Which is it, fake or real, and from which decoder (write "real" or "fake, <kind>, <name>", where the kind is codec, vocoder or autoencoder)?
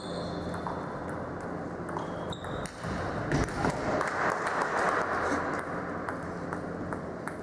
real